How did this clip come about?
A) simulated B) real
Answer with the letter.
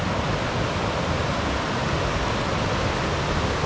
B